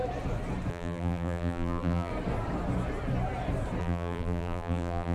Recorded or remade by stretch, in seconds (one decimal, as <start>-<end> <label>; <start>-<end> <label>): 0.0-0.7 recorded; 0.7-2.1 remade; 2.1-3.8 recorded; 3.8-5.1 remade